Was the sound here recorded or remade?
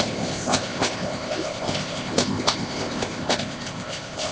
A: remade